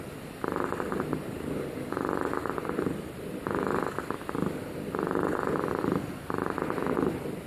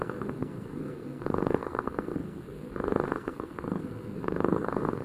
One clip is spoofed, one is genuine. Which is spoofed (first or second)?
second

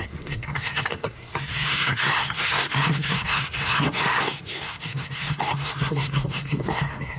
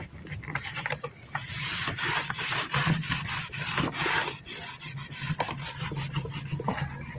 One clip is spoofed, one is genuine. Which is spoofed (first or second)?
first